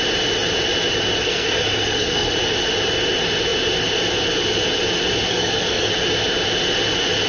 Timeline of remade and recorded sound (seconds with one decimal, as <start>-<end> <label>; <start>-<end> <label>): 0.0-1.2 recorded; 1.2-2.3 remade; 2.3-5.3 recorded; 5.3-5.9 remade; 5.9-7.3 recorded